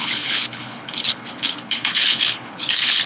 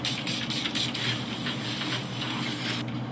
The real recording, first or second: second